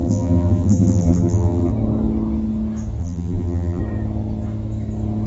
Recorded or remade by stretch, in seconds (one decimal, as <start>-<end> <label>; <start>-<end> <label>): 0.0-1.7 remade; 1.7-3.0 recorded; 3.0-3.8 remade; 3.8-5.3 recorded